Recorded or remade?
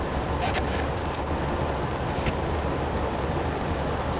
recorded